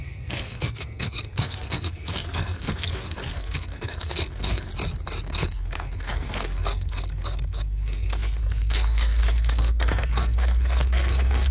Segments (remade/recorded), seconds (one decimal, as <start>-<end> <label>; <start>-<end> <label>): 0.0-4.7 remade; 4.7-5.2 recorded; 5.2-11.5 remade